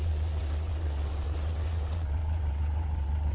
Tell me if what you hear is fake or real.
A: fake